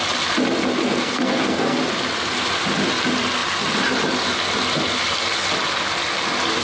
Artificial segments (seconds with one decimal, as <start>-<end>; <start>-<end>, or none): 0.8-1.8